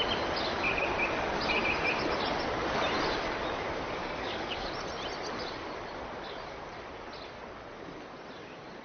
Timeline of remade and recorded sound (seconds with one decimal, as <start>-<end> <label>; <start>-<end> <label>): 0.0-4.0 recorded; 4.0-4.7 remade; 4.7-8.8 recorded